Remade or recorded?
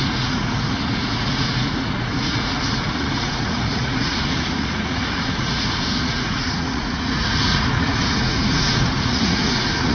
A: remade